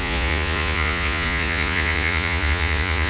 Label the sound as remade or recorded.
remade